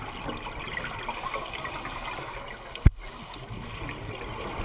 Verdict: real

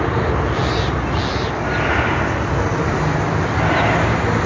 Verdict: real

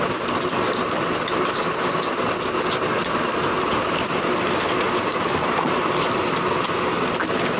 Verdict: real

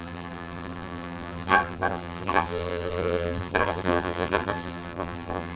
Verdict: fake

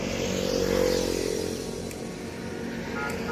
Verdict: real